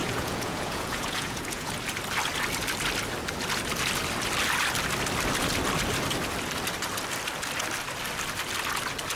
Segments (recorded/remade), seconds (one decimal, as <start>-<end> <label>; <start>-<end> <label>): 0.0-1.7 remade; 1.7-9.2 recorded